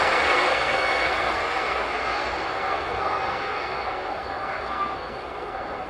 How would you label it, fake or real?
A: fake